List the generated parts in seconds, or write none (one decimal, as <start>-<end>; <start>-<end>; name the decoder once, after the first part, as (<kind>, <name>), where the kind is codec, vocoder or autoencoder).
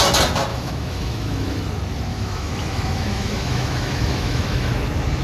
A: 0.5-1.6 (autoencoder, DAC-VAE); 2.1-4.7